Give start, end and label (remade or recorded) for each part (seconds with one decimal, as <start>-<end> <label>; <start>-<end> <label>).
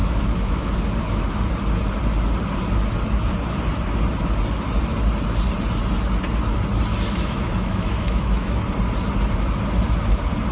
0.0-0.7 remade; 0.7-6.9 recorded; 6.9-8.6 remade; 8.6-10.5 recorded